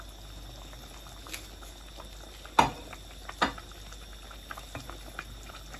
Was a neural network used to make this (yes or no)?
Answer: no